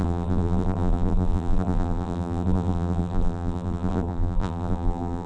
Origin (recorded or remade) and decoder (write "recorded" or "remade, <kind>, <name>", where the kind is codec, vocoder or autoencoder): remade, vocoder, BigVGAN v2